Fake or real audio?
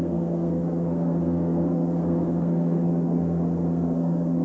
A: fake